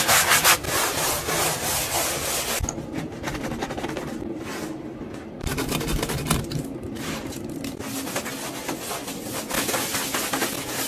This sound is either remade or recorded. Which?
recorded